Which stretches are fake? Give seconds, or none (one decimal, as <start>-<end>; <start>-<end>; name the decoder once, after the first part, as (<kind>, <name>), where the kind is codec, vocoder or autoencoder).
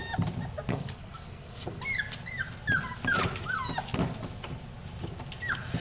0.7-1.8 (codec, SNAC)